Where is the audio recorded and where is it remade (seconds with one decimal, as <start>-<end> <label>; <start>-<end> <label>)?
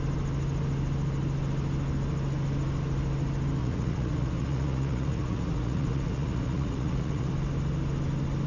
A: 0.0-3.6 recorded; 3.6-7.3 remade; 7.3-8.5 recorded